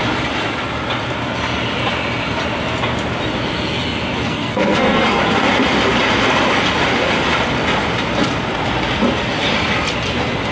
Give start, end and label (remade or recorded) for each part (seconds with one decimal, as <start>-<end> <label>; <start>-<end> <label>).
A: 0.0-4.2 recorded; 4.2-5.2 remade; 5.2-10.5 recorded